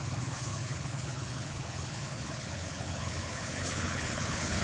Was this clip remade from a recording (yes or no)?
yes